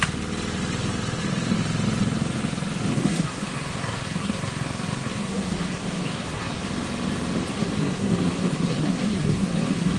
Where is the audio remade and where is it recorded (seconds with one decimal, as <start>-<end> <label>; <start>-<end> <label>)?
0.0-2.9 recorded; 2.9-6.6 remade; 6.6-7.5 recorded; 7.5-10.0 remade